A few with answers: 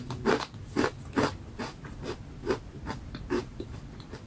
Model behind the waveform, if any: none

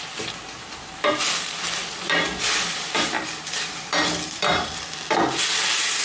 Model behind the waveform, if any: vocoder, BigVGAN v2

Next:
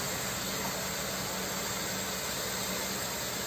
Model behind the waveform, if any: none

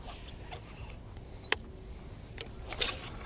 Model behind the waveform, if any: none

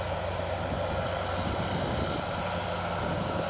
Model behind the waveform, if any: none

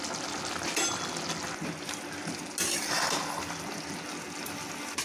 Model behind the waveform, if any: none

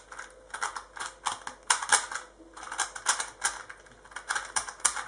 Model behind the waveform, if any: none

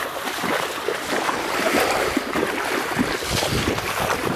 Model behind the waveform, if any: none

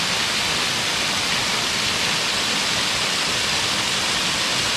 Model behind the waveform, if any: none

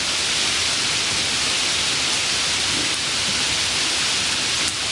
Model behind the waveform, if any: none